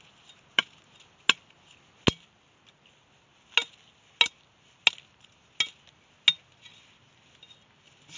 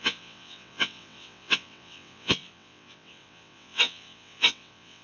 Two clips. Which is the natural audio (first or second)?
first